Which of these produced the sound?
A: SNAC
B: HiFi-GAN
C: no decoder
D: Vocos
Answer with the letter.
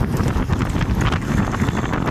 C